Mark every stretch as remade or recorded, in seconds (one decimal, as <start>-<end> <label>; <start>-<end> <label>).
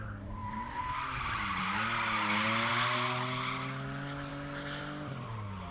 0.0-5.7 recorded